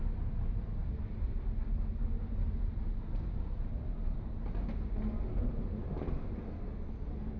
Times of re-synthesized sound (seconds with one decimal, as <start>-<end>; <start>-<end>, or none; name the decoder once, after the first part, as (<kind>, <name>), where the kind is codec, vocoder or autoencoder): none

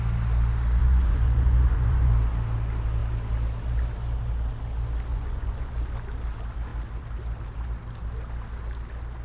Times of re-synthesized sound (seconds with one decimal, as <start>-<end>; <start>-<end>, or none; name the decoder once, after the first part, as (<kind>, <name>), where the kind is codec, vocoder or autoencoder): 0.8-2.1 (vocoder, Vocos); 5.1-5.7

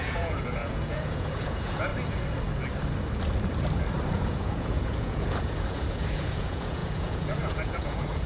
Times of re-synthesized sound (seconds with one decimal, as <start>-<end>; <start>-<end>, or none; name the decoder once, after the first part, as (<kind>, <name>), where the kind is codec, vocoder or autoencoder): 0.0-1.9 (vocoder, Vocos); 4.1-8.3

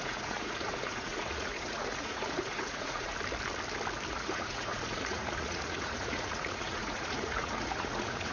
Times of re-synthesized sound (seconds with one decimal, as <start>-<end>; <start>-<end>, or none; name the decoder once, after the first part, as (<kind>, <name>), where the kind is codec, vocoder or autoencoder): 0.0-3.1 (vocoder, Vocos); 4.1-8.3

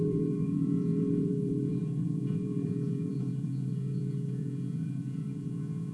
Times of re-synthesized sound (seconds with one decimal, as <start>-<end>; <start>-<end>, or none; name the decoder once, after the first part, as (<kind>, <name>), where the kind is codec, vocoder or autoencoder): 0.0-5.9 (vocoder, Vocos)

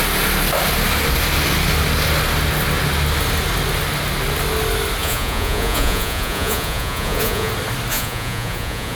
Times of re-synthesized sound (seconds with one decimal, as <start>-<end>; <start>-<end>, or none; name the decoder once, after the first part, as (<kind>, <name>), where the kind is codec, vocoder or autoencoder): 5.0-7.5 (vocoder, Vocos); 7.9-9.0

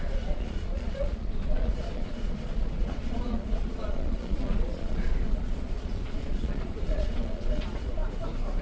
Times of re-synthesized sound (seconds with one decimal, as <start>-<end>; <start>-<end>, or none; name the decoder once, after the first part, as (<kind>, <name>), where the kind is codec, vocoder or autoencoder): 0.0-8.0 (vocoder, Vocos)